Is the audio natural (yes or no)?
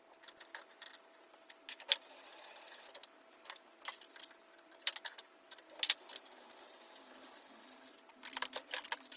yes